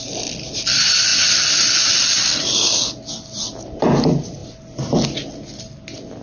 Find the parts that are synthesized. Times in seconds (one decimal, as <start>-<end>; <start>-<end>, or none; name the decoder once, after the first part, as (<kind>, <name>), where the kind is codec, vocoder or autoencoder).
none